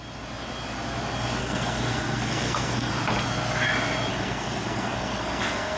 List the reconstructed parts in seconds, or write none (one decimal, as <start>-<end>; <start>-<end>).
1.4-2.9; 4.1-5.8